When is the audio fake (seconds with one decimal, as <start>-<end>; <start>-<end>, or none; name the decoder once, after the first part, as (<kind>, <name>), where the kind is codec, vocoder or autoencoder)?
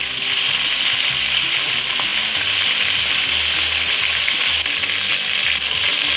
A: none